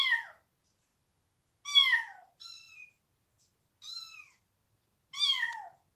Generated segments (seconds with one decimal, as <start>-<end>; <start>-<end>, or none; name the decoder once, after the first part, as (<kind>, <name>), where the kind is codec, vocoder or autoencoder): none